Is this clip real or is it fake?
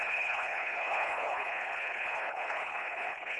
fake